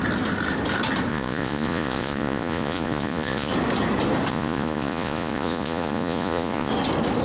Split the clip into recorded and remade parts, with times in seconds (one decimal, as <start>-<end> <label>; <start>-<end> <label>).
0.0-1.1 recorded; 1.1-3.5 remade; 3.5-4.3 recorded; 4.3-6.7 remade; 6.7-7.2 recorded